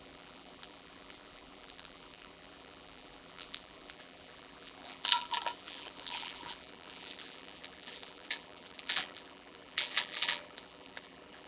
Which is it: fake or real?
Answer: fake